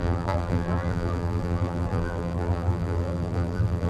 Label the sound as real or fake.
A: fake